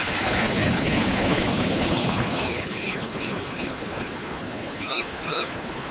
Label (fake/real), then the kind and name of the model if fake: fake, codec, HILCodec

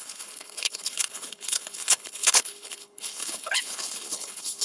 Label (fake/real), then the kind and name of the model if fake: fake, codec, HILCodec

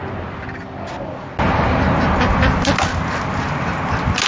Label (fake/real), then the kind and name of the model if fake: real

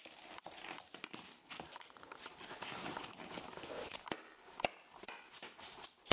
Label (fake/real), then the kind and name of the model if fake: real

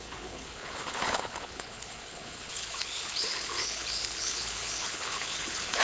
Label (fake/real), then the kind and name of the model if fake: fake, codec, HILCodec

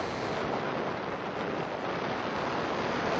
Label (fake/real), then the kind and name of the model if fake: real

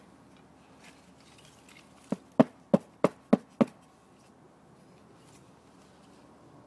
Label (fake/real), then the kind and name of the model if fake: real